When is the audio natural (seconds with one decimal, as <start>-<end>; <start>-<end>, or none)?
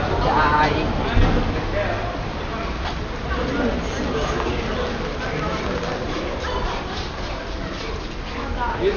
0.0-9.0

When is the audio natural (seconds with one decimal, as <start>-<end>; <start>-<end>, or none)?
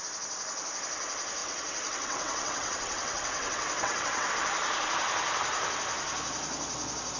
0.0-1.4; 4.3-7.2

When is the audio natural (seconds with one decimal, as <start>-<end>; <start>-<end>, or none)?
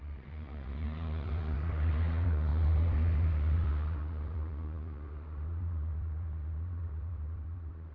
none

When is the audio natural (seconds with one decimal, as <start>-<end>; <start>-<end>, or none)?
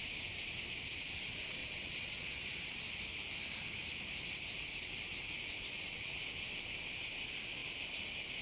0.0-1.6; 2.8-5.7; 6.2-8.4